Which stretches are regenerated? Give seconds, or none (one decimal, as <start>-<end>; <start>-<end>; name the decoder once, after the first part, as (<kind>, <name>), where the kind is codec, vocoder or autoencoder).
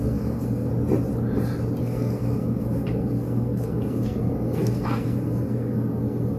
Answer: 0.0-0.7 (codec, SNAC); 1.8-6.4